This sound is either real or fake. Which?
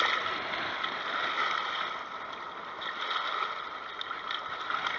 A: real